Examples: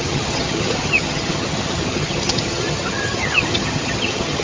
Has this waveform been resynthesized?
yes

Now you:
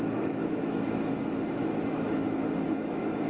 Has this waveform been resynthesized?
yes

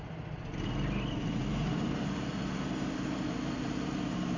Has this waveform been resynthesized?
yes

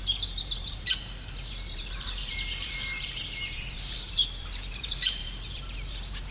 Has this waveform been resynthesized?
yes